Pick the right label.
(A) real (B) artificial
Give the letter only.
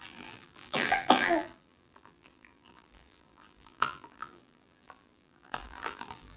B